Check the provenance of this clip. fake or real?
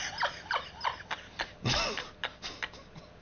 real